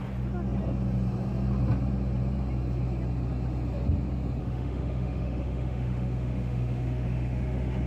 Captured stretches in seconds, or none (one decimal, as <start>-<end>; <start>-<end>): 0.0-4.4